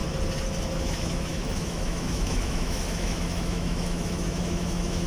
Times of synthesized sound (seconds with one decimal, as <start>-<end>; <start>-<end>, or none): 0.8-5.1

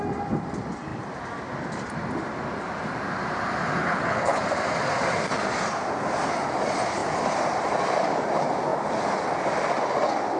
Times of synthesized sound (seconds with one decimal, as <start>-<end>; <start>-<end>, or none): 3.8-4.4

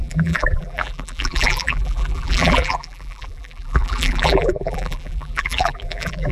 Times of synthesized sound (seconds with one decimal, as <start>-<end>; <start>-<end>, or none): 0.0-6.3

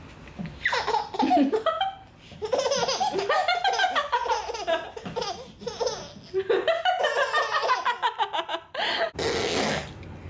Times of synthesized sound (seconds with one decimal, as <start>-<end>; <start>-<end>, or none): none

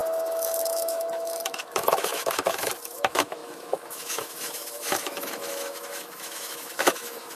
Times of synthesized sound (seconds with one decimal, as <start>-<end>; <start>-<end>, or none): 0.0-7.4

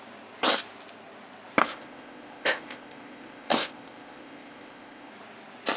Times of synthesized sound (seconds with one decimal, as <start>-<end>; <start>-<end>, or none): 1.6-5.1

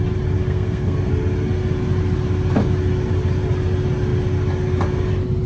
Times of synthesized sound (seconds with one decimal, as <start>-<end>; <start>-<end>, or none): 0.4-1.1